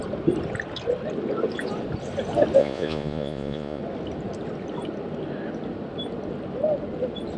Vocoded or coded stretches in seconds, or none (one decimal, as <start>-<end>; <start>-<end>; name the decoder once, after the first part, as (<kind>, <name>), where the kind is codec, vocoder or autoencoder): 2.6-3.8 (vocoder, Vocos)